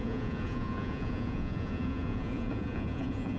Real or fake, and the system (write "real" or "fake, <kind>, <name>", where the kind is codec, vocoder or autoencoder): fake, vocoder, Vocos